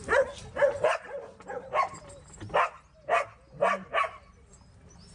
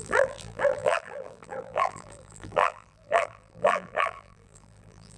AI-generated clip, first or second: second